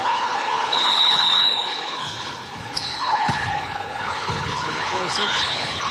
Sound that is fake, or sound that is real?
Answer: fake